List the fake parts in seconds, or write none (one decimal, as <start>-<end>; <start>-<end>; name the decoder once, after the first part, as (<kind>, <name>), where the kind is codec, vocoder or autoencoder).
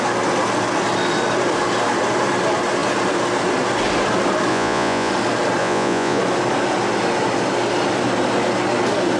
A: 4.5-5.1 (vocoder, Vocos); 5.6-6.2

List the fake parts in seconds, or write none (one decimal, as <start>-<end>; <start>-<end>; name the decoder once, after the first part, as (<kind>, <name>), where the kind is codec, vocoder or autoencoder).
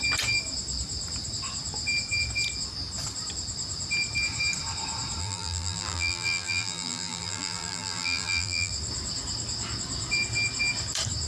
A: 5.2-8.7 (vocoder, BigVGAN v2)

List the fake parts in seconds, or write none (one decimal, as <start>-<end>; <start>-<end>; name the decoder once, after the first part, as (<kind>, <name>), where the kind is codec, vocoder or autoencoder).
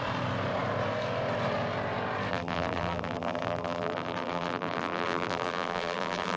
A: 2.3-6.4 (vocoder, BigVGAN v2)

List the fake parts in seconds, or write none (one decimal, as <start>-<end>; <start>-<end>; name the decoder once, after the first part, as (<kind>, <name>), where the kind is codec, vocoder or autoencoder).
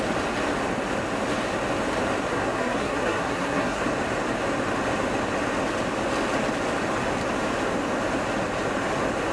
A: 2.3-3.8 (codec, SNAC)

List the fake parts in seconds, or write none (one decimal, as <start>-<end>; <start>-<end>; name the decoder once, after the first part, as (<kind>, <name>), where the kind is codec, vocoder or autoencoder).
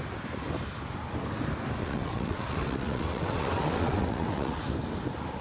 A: 1.8-4.6 (vocoder, WaveNeXt)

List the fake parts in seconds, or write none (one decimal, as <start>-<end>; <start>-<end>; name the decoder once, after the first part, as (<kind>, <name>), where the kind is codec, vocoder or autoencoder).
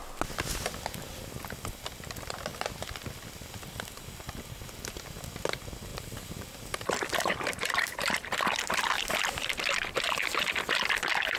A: 5.9-8.3 (vocoder, BigVGAN v2)